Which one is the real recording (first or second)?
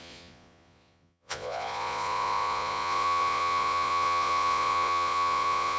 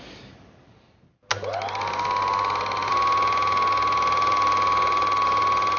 second